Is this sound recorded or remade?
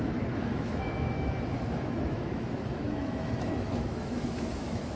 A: remade